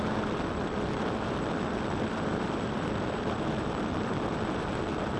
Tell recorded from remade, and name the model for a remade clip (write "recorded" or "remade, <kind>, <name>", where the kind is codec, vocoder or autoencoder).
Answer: remade, vocoder, BigVGAN v2